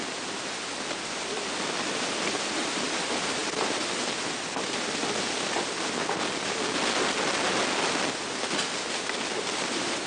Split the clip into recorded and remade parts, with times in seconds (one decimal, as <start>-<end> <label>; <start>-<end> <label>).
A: 0.0-10.1 recorded